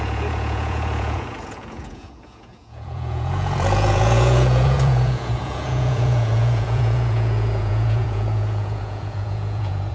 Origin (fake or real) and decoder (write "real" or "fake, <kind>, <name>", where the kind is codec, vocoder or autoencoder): fake, vocoder, Vocos